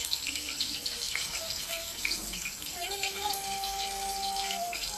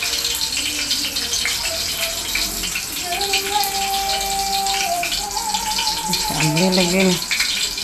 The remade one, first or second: first